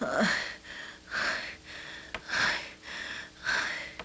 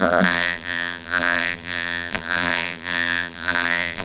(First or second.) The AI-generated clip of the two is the second